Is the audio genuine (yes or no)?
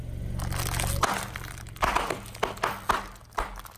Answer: yes